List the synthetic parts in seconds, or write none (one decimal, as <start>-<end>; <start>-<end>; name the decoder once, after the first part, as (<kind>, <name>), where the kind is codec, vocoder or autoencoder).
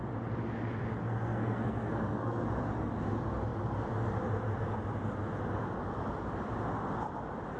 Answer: 1.0-2.5 (codec, SNAC)